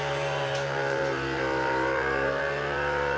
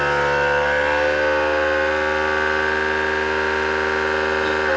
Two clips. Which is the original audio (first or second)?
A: second